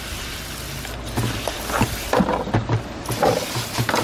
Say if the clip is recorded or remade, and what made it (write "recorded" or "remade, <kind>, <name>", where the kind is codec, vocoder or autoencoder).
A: recorded